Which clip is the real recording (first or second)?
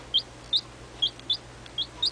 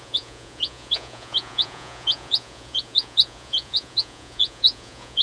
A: first